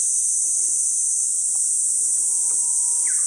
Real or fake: real